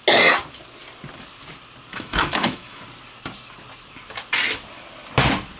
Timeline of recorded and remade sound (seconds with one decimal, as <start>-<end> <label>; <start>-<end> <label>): 0.0-1.9 recorded; 1.9-2.8 remade; 2.8-5.6 recorded